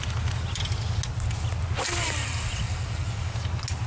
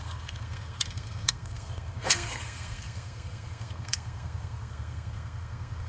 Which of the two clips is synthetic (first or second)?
second